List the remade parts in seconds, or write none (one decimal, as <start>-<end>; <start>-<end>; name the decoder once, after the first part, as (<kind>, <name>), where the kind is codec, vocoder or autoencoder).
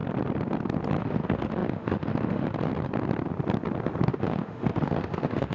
1.0-2.7 (autoencoder, DAC-VAE); 4.1-5.5